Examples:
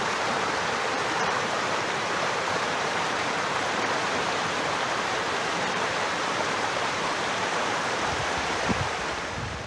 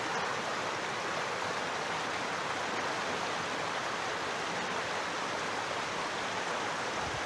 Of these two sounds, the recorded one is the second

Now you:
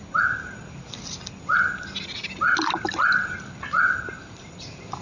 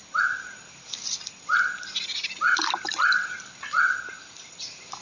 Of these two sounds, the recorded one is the first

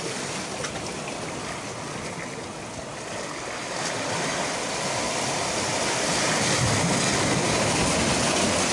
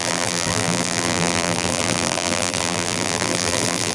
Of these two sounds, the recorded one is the first